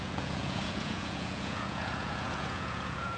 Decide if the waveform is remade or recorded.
remade